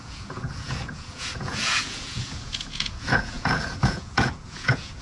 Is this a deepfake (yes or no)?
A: yes